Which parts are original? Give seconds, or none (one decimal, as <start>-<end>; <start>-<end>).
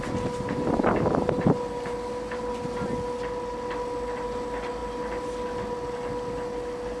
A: 0.0-7.0